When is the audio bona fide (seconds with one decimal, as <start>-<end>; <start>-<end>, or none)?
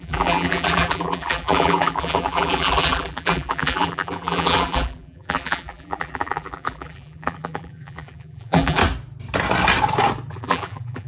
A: 8.8-10.3